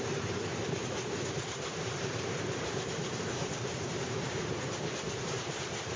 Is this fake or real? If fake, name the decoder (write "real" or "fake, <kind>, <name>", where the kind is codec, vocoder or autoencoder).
fake, vocoder, BigVGAN v2